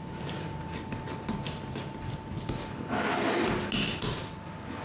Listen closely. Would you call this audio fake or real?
real